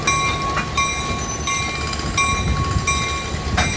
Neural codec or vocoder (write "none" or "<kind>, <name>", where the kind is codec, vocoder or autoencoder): none